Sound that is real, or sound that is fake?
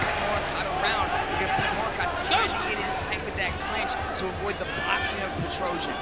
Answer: real